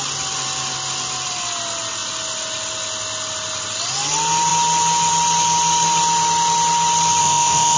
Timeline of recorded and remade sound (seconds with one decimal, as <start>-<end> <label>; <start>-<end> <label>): 0.0-7.2 recorded; 7.2-7.8 remade